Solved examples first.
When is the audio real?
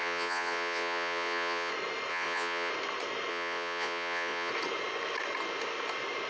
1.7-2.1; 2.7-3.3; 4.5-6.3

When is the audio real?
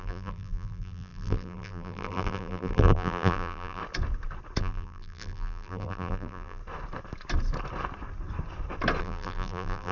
3.8-4.6; 6.6-9.0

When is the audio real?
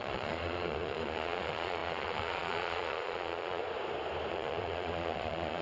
3.6-4.3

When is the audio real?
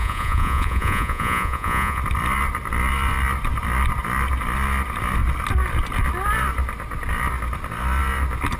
2.0-8.6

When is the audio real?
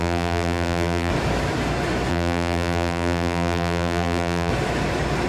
1.1-2.1; 4.5-5.3